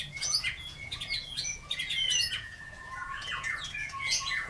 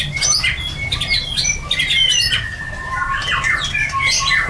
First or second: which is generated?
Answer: first